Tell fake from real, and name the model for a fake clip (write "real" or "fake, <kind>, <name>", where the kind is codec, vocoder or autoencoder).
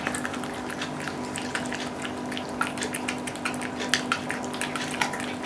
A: real